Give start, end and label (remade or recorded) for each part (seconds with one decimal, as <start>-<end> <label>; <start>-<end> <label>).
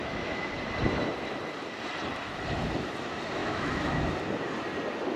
0.0-0.5 remade; 0.5-3.4 recorded; 3.4-4.1 remade; 4.1-5.2 recorded